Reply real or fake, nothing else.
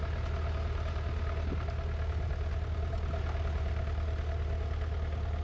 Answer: real